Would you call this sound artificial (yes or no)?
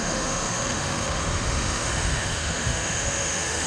yes